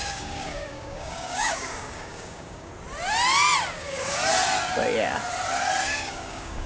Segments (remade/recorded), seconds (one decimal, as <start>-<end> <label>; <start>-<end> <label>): 0.0-2.7 remade; 2.7-3.7 recorded; 3.7-4.2 remade; 4.2-5.8 recorded; 5.8-6.7 remade